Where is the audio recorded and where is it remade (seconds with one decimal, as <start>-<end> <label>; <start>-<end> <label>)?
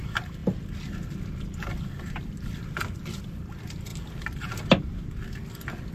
0.0-5.9 recorded